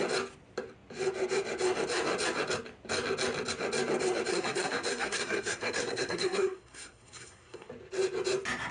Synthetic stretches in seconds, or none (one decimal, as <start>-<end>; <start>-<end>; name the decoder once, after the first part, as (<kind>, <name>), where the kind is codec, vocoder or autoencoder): 4.3-7.7 (codec, SNAC)